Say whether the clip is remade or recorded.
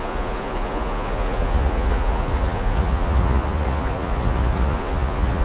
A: remade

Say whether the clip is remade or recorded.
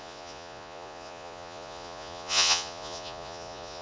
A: remade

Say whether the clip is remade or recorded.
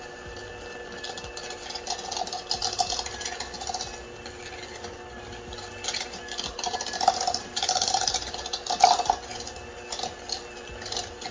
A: recorded